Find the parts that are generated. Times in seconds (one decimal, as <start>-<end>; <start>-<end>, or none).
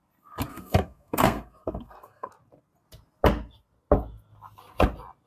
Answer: 0.5-2.3